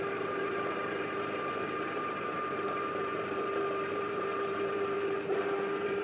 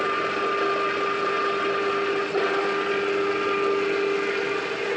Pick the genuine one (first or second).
second